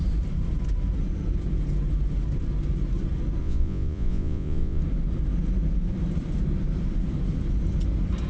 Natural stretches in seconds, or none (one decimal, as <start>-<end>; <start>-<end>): 0.0-3.4; 4.8-8.3